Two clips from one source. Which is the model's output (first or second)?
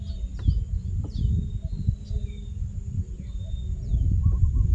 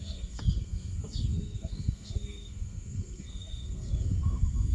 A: second